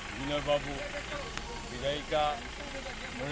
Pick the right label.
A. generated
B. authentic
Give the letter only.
B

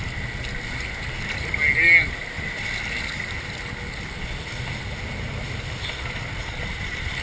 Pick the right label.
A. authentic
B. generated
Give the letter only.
A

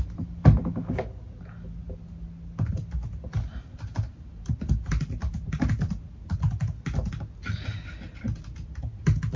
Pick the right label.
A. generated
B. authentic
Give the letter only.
B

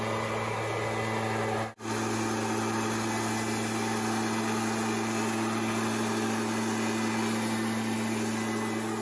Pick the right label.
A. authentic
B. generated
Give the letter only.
A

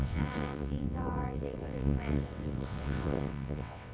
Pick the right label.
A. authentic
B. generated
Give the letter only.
B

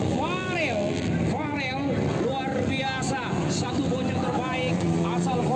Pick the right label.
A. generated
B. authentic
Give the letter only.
B